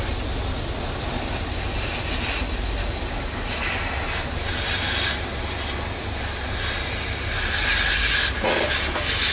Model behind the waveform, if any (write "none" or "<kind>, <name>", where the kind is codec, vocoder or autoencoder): none